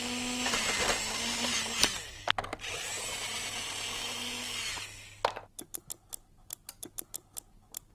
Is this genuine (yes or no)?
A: yes